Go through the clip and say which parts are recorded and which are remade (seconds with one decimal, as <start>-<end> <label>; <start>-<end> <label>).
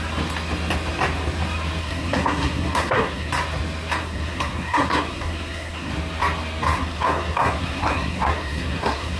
0.0-1.8 recorded; 1.8-3.3 remade; 3.3-4.0 recorded; 4.0-5.9 remade; 5.9-6.7 recorded; 6.7-9.2 remade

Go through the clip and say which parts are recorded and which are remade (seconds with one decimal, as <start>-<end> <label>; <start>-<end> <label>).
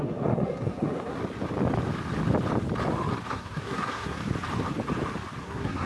0.0-1.2 remade; 1.2-3.3 recorded; 3.3-4.2 remade; 4.2-5.4 recorded; 5.4-5.9 remade